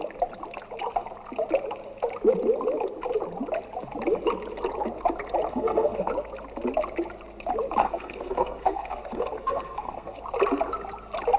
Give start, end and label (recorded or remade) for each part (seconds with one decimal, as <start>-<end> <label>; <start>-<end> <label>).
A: 0.0-5.5 recorded; 5.5-6.1 remade; 6.1-7.8 recorded; 7.8-10.2 remade; 10.2-11.4 recorded